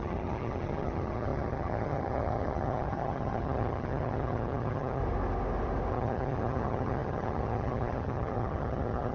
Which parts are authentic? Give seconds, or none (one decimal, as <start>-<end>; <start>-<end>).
5.0-5.9